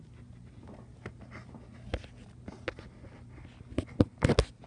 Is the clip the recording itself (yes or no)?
yes